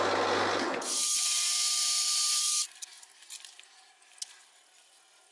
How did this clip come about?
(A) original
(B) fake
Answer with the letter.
A